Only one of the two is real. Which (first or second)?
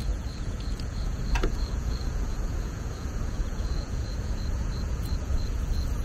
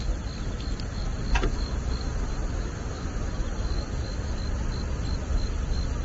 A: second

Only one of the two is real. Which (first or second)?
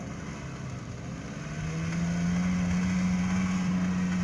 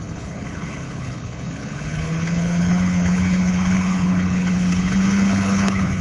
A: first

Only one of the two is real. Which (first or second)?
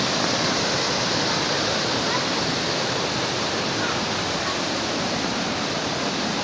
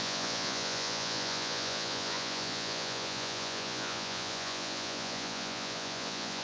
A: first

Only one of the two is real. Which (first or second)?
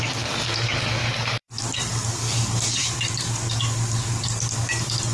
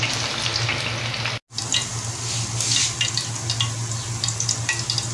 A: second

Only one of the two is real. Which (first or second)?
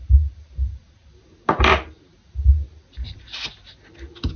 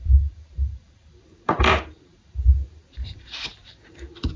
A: first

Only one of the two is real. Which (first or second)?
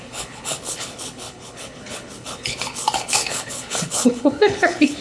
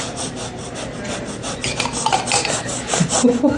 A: second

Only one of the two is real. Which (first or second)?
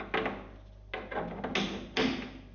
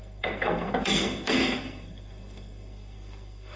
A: first